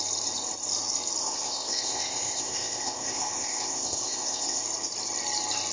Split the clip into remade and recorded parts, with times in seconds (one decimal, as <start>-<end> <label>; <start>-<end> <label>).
0.0-1.2 recorded; 1.2-4.6 remade; 4.6-5.7 recorded